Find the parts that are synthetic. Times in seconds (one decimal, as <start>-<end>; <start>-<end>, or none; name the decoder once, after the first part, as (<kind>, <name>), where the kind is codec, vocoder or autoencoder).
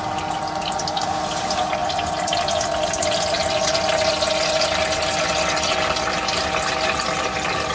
none